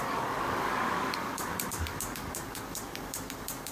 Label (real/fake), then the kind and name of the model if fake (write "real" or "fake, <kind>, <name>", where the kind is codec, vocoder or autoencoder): fake, codec, DAC